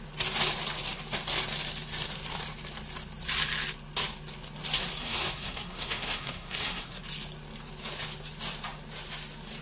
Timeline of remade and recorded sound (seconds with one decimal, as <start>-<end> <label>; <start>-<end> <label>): 0.0-5.0 recorded; 5.0-7.0 remade; 7.0-9.6 recorded